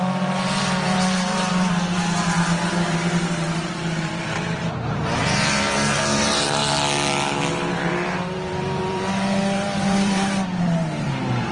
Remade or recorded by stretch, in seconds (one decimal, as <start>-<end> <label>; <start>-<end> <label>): 0.0-6.6 remade; 6.6-7.5 recorded; 7.5-11.5 remade